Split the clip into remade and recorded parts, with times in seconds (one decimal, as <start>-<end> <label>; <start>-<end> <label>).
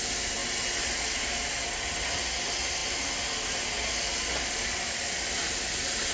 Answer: 0.0-6.1 recorded